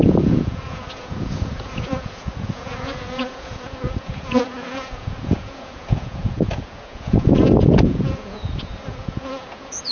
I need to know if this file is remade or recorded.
remade